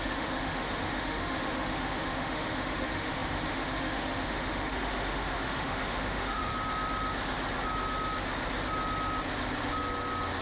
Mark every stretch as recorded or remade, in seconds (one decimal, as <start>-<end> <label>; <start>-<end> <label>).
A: 0.0-6.5 remade; 6.5-10.4 recorded